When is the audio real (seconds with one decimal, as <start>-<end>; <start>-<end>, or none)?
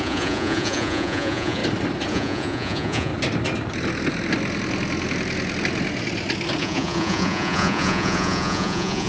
1.6-2.1; 3.1-6.6